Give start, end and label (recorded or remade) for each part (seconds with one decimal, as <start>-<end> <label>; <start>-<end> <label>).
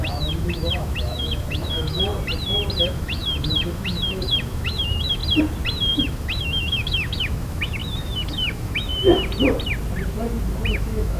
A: 0.0-2.1 remade; 2.1-2.8 recorded; 2.8-5.2 remade; 5.2-5.9 recorded; 5.9-8.9 remade; 8.9-10.7 recorded; 10.7-11.2 remade